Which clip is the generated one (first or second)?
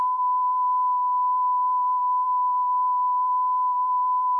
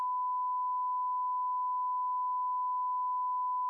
first